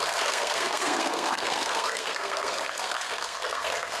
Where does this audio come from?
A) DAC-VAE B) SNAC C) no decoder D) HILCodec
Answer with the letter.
B